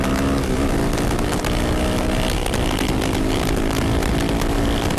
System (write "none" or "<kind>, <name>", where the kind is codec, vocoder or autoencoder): none